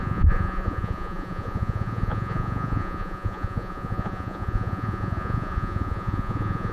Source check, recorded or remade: remade